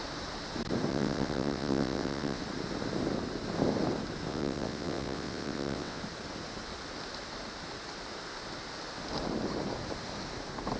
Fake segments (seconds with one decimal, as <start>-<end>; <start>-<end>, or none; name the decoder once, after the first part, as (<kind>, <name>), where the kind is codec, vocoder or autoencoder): 0.9-2.4 (vocoder, WaveNeXt); 4.3-6.0